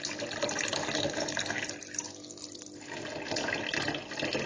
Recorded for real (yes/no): yes